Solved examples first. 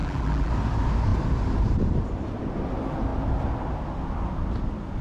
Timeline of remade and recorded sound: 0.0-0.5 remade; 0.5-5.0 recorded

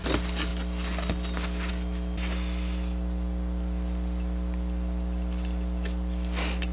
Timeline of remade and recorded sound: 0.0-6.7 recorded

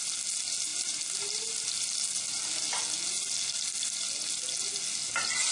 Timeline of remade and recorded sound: 0.0-5.5 recorded

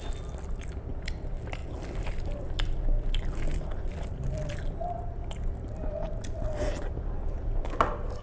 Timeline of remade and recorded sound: 0.0-1.6 recorded; 1.6-4.5 remade; 4.5-6.4 recorded; 6.4-7.4 remade; 7.4-8.2 recorded

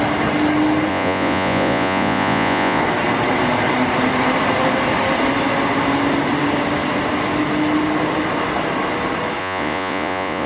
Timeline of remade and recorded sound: 0.0-0.9 recorded; 0.9-2.8 remade; 2.8-9.4 recorded; 9.4-10.5 remade

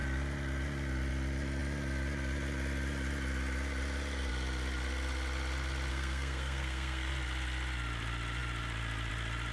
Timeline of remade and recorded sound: 0.0-5.9 recorded; 5.9-7.1 remade; 7.1-9.5 recorded